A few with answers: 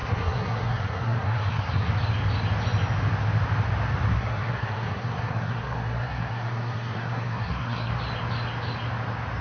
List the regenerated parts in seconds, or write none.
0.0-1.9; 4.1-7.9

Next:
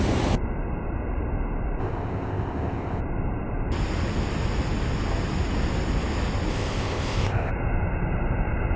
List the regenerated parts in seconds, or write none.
1.8-3.0; 6.5-7.5

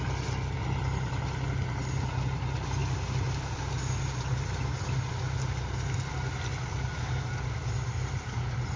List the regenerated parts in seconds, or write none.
none

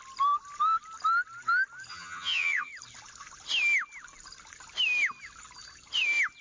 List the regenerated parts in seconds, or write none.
1.9-2.7

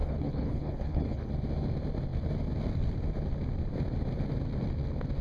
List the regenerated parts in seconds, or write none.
0.0-1.3